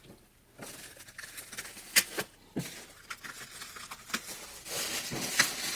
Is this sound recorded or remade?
recorded